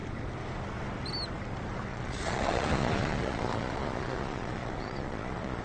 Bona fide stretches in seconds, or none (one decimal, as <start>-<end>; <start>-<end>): 0.0-1.9